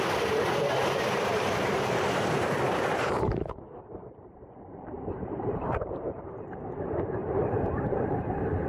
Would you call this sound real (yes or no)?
no